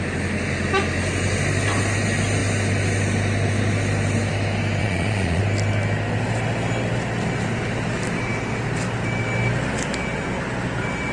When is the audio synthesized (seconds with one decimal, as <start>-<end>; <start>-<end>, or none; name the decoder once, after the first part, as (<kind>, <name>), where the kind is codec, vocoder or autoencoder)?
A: 4.8-5.4 (vocoder, Vocos)